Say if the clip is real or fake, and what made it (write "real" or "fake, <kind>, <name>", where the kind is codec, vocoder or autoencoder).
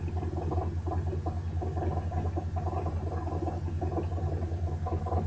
real